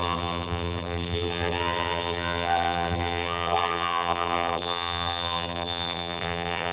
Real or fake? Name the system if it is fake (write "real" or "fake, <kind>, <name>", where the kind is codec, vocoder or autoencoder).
fake, vocoder, BigVGAN v2